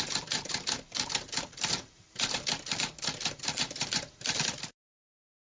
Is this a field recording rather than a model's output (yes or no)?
no